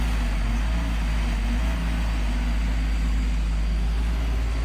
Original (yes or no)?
yes